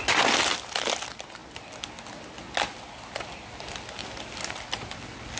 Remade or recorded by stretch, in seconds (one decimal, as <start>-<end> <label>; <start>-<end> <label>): 0.0-5.4 recorded